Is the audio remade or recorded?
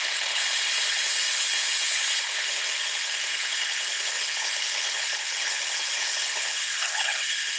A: remade